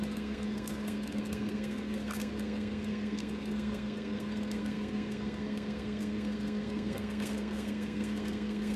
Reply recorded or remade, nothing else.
remade